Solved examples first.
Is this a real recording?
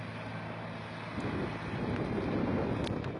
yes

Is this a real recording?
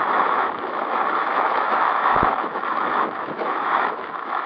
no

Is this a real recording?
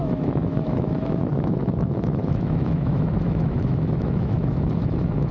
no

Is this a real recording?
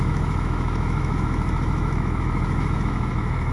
no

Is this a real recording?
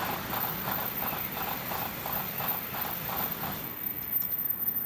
yes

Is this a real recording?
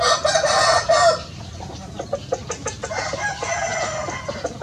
yes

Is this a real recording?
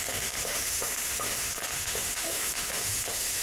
no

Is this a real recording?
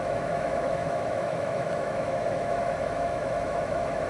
no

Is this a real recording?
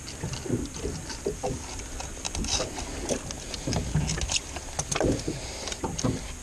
yes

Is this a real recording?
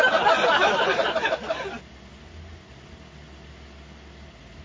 yes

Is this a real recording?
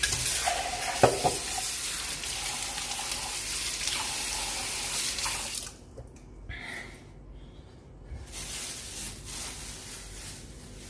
yes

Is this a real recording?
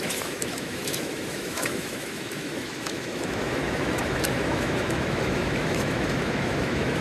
no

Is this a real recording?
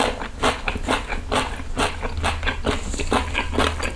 yes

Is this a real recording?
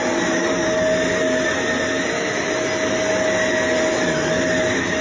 yes